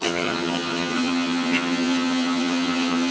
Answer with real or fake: fake